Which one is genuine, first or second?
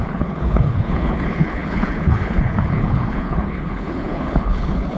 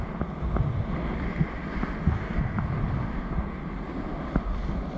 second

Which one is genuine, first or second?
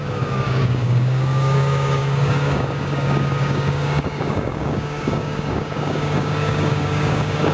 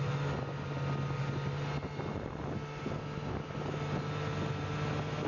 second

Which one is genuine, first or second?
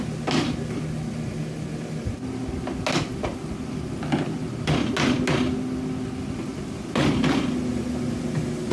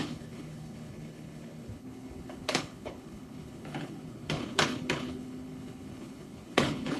first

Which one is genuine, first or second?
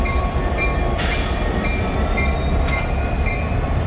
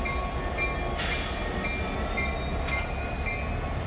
second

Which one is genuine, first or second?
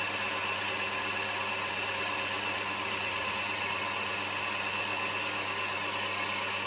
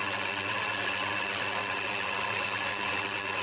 first